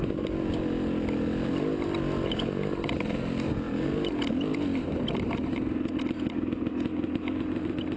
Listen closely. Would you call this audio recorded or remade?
recorded